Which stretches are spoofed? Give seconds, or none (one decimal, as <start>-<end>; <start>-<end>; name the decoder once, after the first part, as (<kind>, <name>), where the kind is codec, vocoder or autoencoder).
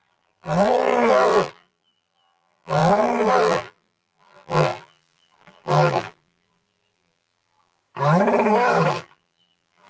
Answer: 0.0-7.8 (vocoder, BigVGAN v2); 8.9-9.9